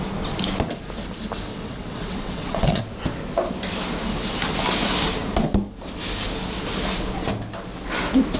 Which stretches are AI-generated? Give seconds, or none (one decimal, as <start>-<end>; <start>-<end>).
1.5-2.8